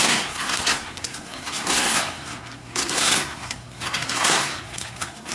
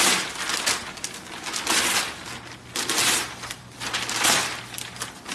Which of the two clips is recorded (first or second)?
second